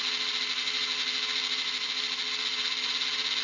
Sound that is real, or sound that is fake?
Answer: real